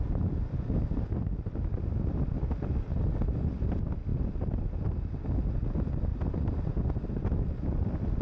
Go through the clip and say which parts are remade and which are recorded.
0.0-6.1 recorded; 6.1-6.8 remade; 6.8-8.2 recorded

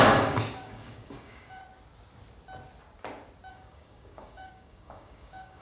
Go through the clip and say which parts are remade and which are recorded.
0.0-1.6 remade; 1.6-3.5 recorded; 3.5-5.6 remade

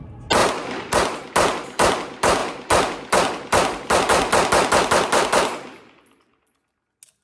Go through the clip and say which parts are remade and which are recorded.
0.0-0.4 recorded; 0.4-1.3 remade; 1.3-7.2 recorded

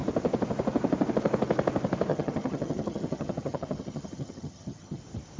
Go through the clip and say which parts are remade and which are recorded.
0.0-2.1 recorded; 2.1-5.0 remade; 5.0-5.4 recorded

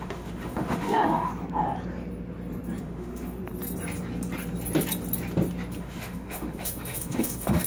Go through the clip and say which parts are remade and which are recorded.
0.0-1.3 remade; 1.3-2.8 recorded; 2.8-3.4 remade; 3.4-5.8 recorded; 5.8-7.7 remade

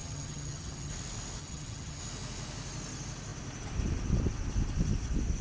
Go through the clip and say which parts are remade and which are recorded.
0.0-0.9 remade; 0.9-1.4 recorded; 1.4-2.0 remade; 2.0-5.4 recorded